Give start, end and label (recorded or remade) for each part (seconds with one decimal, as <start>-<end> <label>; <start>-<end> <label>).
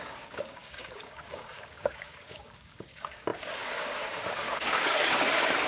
0.0-5.7 remade